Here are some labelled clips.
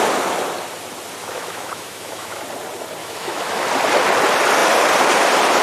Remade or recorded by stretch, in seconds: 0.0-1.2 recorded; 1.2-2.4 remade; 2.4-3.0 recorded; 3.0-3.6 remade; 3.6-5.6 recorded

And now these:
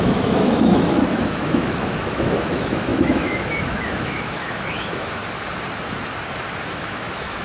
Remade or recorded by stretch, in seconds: 0.0-5.2 remade; 5.2-6.7 recorded; 6.7-7.4 remade

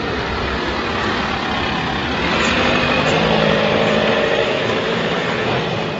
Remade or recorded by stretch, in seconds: 0.0-4.4 recorded; 4.4-5.5 remade; 5.5-6.0 recorded